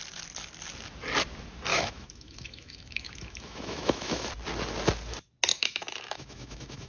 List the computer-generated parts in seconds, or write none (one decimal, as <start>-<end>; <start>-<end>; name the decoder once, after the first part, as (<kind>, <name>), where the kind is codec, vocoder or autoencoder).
1.7-4.3 (autoencoder, DAC-VAE); 5.5-6.9